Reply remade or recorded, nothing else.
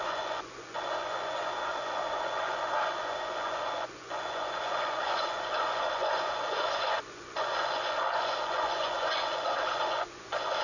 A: remade